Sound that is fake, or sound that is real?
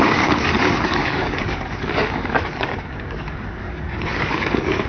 fake